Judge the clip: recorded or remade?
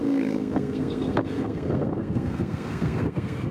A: remade